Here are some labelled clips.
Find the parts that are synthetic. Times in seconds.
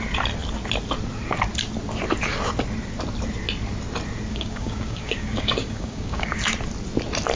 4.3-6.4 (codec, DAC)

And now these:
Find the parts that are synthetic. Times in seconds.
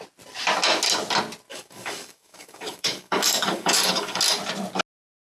1.5-4.2 (codec, DAC)